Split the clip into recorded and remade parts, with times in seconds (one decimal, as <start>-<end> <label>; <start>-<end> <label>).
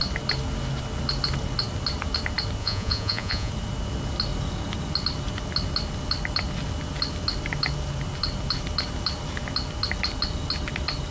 0.0-2.6 recorded; 2.6-3.5 remade; 3.5-11.1 recorded